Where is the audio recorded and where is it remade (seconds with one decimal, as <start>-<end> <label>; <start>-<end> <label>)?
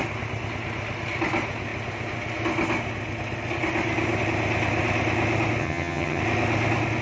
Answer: 0.0-5.6 recorded; 5.6-6.2 remade; 6.2-7.0 recorded